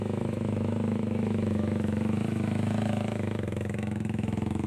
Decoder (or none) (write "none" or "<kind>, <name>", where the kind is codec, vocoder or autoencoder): autoencoder, DAC-VAE